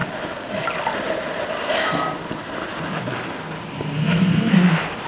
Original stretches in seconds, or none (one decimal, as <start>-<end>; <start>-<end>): 0.0-4.0; 4.5-5.1